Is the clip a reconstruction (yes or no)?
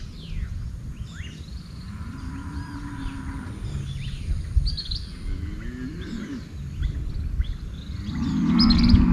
no